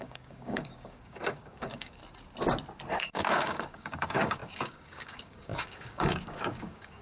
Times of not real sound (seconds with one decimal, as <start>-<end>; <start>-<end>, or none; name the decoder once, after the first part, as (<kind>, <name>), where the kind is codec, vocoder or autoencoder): 0.0-2.0 (codec, DAC); 2.9-7.0

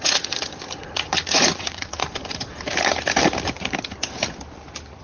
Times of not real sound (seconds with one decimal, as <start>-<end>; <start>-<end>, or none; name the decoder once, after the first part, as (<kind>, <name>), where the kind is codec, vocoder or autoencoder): 0.0-2.0 (vocoder, Vocos)

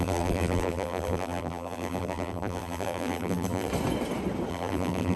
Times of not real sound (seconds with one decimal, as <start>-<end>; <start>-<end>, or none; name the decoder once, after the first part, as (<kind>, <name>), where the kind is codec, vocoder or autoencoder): 0.0-3.7 (vocoder, BigVGAN v2); 4.5-5.2

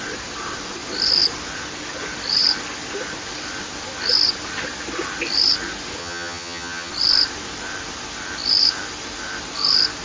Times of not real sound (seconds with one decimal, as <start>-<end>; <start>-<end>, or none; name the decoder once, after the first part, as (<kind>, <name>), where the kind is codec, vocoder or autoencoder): 6.0-6.9 (vocoder, HiFi-GAN)